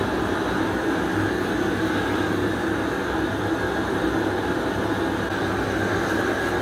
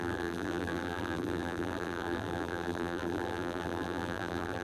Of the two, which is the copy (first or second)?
second